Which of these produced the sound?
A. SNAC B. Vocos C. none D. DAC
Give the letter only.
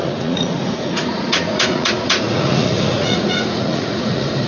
B